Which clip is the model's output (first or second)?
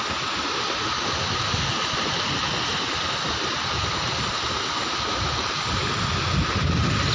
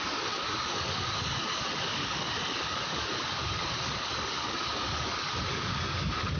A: second